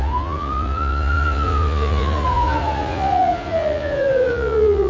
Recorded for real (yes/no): no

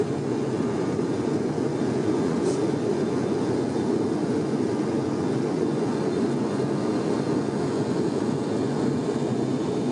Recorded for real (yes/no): no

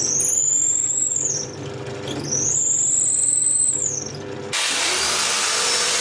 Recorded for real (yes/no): yes